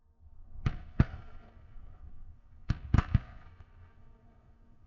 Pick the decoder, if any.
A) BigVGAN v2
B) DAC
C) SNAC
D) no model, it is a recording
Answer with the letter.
C